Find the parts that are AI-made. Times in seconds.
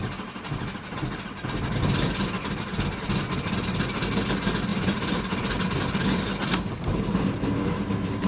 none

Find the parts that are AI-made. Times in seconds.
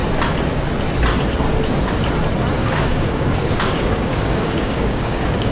2.6-5.5 (codec, DAC)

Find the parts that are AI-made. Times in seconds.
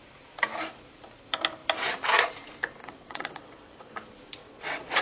2.8-3.9 (vocoder, WaveNeXt); 4.4-5.0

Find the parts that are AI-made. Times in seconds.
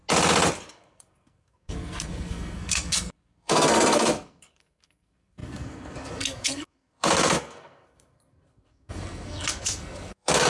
0.7-10.5 (codec, SNAC)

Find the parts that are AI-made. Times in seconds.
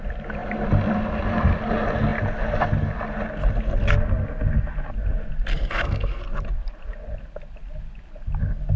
5.5-6.2 (codec, SNAC)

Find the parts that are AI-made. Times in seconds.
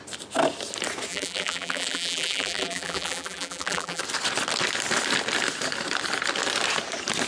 1.1-4.0 (vocoder, BigVGAN v2)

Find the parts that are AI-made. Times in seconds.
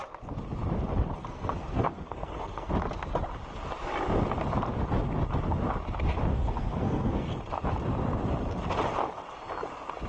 1.2-2.7 (codec, SNAC); 6.3-7.4